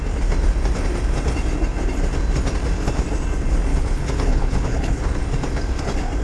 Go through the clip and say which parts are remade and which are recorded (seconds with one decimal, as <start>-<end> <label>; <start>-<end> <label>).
0.0-3.7 recorded; 3.7-5.2 remade; 5.2-6.2 recorded